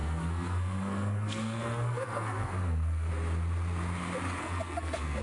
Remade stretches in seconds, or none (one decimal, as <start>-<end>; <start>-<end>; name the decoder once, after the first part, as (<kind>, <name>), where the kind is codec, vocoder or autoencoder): 0.0-3.1 (codec, SNAC); 4.4-5.2